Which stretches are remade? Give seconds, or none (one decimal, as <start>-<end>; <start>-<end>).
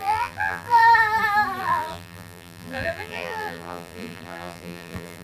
0.0-0.8; 1.6-5.2